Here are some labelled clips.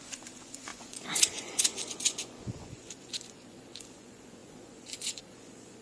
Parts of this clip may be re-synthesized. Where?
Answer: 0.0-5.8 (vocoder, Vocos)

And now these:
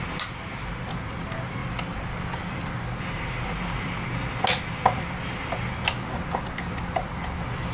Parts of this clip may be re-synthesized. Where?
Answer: 1.6-2.7 (vocoder, BigVGAN v2)